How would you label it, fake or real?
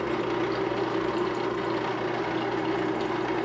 real